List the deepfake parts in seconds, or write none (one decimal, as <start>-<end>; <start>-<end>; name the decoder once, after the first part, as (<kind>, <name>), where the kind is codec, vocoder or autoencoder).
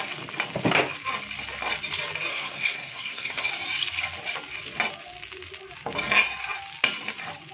2.3-3.5 (codec, SNAC)